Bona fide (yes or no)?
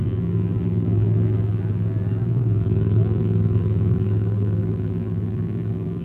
no